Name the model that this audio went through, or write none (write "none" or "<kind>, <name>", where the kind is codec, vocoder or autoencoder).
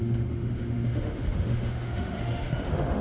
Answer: autoencoder, DAC-VAE